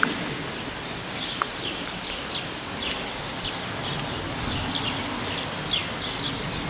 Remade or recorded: recorded